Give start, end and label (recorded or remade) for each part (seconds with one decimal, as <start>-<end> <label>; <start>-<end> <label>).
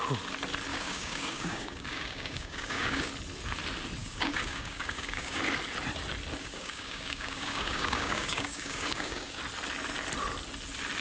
0.0-0.7 recorded; 0.7-3.1 remade; 3.1-4.0 recorded; 4.0-5.4 remade; 5.4-6.4 recorded; 6.4-9.4 remade; 9.4-11.0 recorded